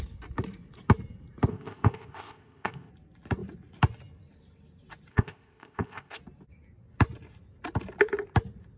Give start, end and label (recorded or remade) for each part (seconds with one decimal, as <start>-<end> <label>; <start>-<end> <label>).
0.0-1.5 recorded; 1.5-2.9 remade; 2.9-5.1 recorded; 5.1-6.2 remade; 6.2-8.8 recorded